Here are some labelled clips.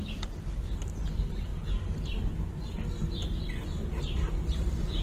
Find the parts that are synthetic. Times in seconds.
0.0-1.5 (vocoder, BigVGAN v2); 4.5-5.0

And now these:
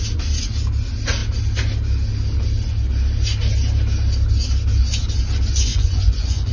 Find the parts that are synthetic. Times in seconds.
5.7-6.5 (vocoder, Vocos)

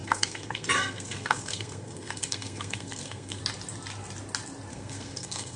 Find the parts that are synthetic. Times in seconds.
0.0-3.4 (codec, SNAC); 4.7-5.6